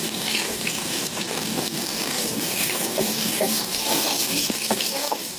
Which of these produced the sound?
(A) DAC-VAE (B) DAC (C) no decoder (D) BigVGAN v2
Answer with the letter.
B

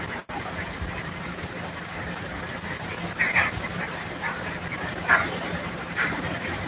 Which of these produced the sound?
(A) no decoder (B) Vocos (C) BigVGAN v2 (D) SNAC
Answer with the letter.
C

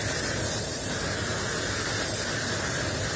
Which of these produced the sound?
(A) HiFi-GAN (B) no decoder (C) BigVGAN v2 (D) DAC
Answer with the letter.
B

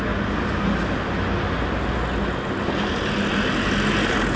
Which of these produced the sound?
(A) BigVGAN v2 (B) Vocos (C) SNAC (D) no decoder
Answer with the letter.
D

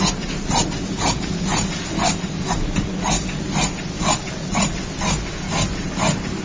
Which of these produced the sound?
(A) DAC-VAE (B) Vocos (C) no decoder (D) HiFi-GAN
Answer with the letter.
C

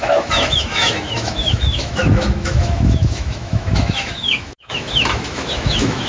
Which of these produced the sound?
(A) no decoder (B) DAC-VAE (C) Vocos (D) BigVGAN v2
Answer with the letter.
B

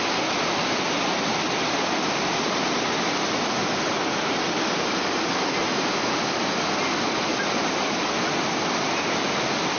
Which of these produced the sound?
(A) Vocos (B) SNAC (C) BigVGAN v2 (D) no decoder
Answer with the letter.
D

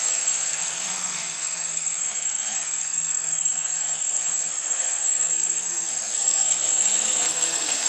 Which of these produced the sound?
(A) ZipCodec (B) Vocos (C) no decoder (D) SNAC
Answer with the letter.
D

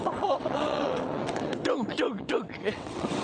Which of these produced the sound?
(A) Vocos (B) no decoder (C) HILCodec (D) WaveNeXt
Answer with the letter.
D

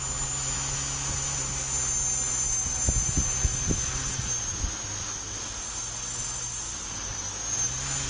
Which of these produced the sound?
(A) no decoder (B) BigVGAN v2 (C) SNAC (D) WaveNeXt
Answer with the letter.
A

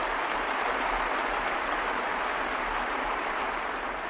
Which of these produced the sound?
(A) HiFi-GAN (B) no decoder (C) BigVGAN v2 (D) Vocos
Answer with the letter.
C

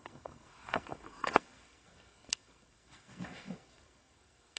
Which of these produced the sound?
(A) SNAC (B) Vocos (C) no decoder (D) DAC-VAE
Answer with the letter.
A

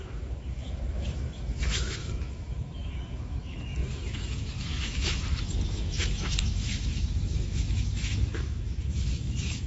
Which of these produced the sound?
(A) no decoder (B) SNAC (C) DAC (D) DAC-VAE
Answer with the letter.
D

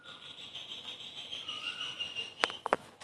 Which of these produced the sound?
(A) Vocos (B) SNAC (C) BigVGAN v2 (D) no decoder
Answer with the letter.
A